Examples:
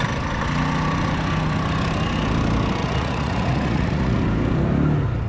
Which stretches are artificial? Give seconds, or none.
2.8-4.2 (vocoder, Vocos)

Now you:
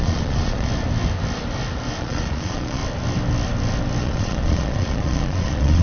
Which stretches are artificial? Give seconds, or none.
0.0-0.7 (vocoder, Vocos); 2.0-2.8; 4.0-5.8